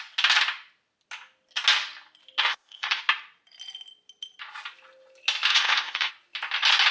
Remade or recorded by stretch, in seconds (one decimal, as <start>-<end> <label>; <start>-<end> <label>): 0.0-2.5 recorded; 2.5-3.0 remade; 3.0-5.5 recorded; 5.5-6.1 remade; 6.1-6.9 recorded